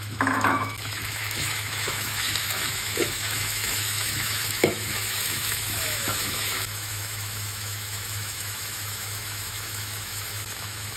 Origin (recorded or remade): remade